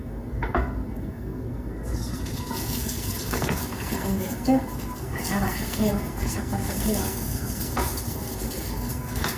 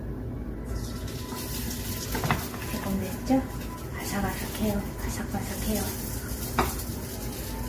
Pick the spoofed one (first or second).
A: first